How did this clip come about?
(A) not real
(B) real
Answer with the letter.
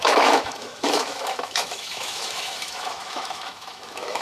A